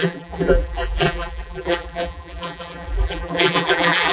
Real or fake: fake